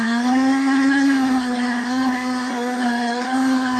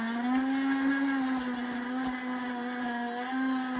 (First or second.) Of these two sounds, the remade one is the first